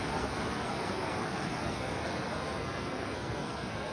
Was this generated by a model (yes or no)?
yes